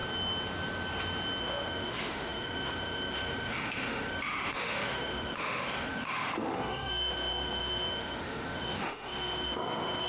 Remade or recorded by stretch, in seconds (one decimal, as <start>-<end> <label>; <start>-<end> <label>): 0.0-1.4 recorded; 1.4-10.1 remade

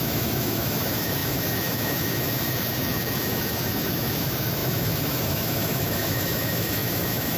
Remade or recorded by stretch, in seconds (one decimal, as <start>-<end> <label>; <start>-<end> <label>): 0.0-7.4 remade

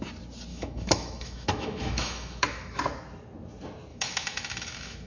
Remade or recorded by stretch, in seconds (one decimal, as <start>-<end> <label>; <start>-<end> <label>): 0.0-0.5 recorded; 0.5-2.8 remade; 2.8-3.9 recorded; 3.9-5.1 remade

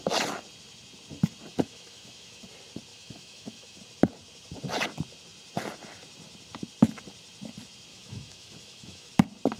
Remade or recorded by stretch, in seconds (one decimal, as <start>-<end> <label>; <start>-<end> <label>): 0.0-1.5 recorded; 1.5-2.4 remade; 2.4-2.9 recorded; 2.9-3.8 remade; 3.8-7.9 recorded; 7.9-9.1 remade; 9.1-9.6 recorded

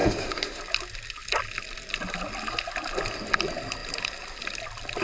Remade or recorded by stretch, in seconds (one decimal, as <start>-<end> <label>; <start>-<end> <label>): 0.0-0.6 remade; 0.6-5.0 recorded

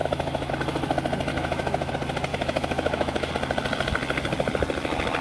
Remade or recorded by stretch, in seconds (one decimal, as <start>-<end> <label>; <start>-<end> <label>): 0.0-0.5 remade; 0.5-1.3 recorded; 1.3-1.9 remade; 1.9-2.3 recorded; 2.3-3.3 remade; 3.3-5.2 recorded

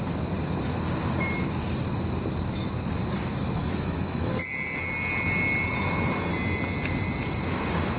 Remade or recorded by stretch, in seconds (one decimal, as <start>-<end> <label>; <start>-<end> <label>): 0.0-3.6 recorded; 3.6-4.3 remade; 4.3-8.0 recorded